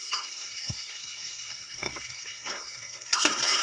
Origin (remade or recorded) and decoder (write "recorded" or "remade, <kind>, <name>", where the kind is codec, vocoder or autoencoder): remade, codec, SNAC